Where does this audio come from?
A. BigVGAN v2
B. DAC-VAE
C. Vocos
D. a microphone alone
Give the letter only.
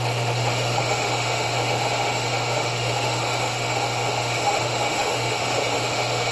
B